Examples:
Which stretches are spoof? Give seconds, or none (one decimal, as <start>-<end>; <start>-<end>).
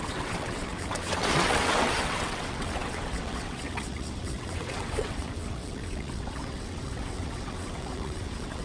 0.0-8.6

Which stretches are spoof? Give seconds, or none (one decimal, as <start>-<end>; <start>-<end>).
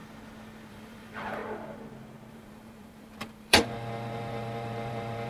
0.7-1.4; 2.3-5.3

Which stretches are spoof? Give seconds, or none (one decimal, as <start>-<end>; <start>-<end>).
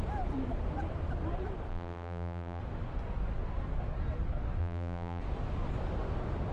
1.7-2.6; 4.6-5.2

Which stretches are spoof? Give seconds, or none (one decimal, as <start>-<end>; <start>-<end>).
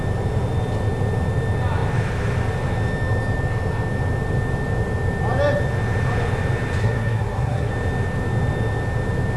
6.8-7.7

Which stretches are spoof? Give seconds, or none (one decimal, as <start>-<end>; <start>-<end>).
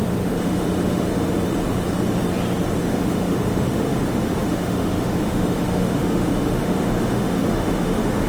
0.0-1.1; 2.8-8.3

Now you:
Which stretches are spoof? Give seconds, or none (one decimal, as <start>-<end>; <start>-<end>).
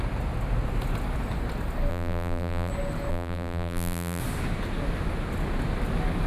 1.9-2.7; 3.1-4.2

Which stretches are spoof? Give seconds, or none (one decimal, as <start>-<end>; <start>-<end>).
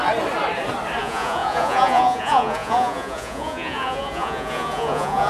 1.0-5.3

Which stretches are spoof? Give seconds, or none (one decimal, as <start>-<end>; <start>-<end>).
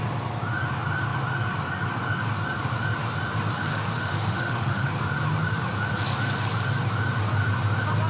3.7-4.9